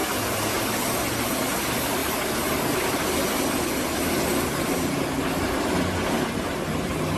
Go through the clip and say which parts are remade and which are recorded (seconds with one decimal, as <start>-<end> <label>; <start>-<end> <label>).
0.0-7.2 recorded